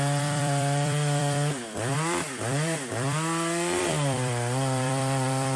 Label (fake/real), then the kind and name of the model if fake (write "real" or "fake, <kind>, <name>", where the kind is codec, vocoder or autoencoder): fake, vocoder, BigVGAN v2